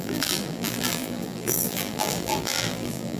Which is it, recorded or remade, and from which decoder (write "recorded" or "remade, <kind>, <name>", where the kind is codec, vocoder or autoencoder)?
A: remade, vocoder, BigVGAN v2